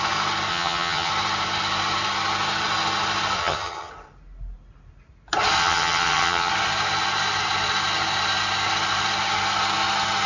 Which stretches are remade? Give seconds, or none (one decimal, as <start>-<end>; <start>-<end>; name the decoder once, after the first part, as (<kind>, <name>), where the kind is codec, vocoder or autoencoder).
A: 0.5-1.1 (vocoder, HiFi-GAN); 3.4-3.9; 5.6-6.5